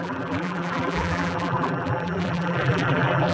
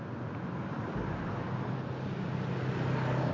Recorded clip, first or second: second